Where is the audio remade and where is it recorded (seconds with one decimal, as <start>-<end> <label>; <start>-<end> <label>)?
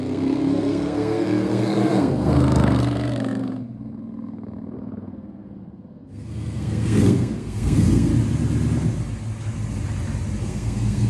0.0-8.1 remade; 8.1-10.4 recorded; 10.4-11.1 remade